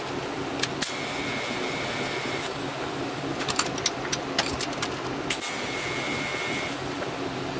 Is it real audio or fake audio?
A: real